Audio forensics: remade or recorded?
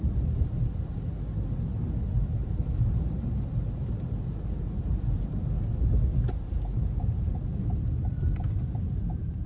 recorded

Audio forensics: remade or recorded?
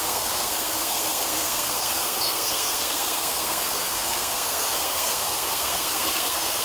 remade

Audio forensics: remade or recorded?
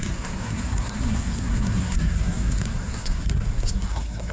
remade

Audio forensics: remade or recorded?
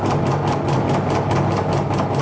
recorded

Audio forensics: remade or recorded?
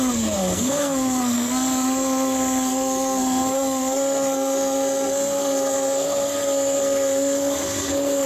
remade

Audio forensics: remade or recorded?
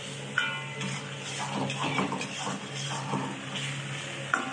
recorded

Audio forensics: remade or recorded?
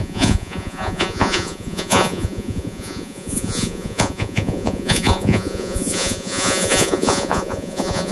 remade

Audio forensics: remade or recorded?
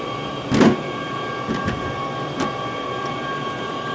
recorded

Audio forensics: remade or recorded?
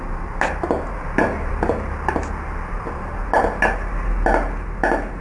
recorded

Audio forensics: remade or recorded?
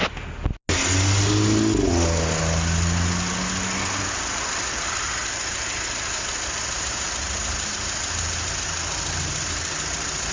recorded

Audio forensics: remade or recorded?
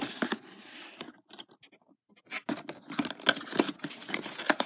recorded